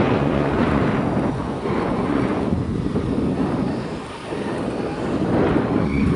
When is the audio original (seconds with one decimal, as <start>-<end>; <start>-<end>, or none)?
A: 0.8-1.3; 2.7-5.8